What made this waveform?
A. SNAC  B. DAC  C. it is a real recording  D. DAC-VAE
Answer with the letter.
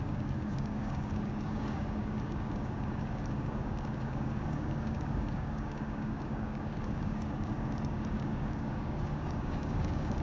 B